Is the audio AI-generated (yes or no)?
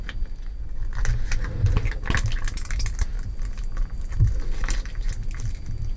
no